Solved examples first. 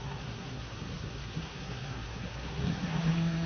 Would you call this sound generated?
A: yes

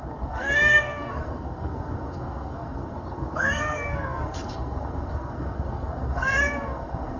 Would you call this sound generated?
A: yes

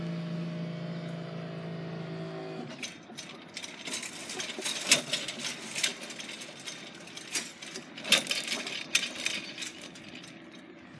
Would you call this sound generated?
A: no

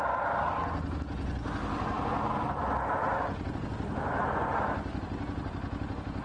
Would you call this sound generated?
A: no